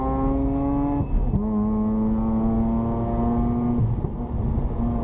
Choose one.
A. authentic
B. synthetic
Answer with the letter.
A